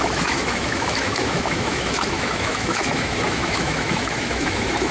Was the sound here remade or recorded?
remade